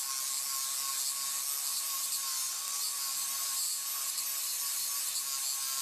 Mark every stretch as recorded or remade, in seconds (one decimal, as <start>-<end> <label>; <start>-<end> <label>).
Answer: 0.0-1.7 recorded; 1.7-5.2 remade; 5.2-5.8 recorded